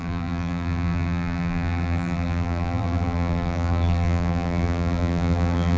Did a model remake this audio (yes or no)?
yes